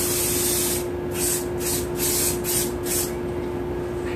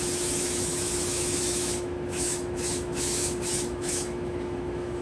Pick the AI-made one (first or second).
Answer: second